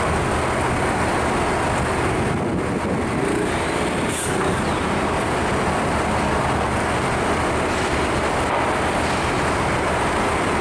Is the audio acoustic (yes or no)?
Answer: yes